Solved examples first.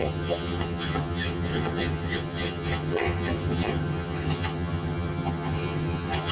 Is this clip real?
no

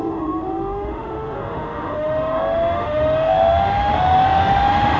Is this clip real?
no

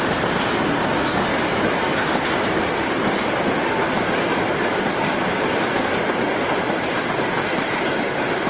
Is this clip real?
yes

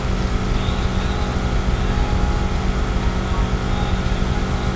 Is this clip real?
yes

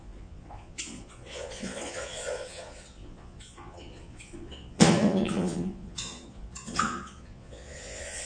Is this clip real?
no